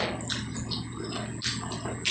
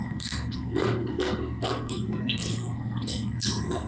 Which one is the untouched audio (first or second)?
first